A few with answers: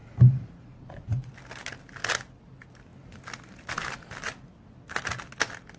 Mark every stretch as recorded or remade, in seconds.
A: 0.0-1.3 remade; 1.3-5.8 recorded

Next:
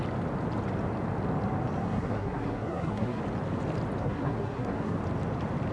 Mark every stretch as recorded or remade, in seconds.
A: 0.0-1.8 recorded; 1.8-3.2 remade; 3.2-4.0 recorded; 4.0-5.0 remade; 5.0-5.7 recorded

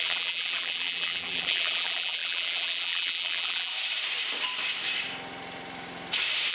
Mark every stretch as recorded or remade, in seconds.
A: 0.0-3.7 remade; 3.7-6.5 recorded

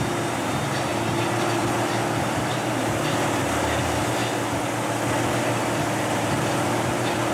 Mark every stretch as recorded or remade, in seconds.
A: 0.0-0.9 remade; 0.9-2.5 recorded; 2.5-4.2 remade; 4.2-6.0 recorded; 6.0-7.3 remade

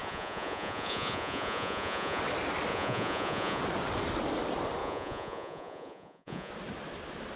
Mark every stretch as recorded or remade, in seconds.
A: 0.0-2.2 remade; 2.2-2.7 recorded; 2.7-3.6 remade; 3.6-4.8 recorded; 4.8-6.5 remade; 6.5-7.4 recorded